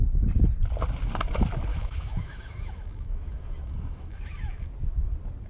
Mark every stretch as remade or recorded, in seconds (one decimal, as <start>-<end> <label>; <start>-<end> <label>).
0.0-1.7 recorded; 1.7-4.7 remade; 4.7-5.5 recorded